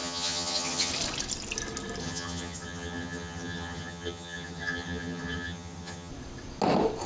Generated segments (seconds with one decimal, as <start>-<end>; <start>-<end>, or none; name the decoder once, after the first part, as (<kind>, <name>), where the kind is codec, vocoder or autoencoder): 0.0-0.9 (vocoder, HiFi-GAN); 2.0-6.1